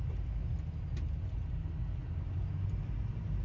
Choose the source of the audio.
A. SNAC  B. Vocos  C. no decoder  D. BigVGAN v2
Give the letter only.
C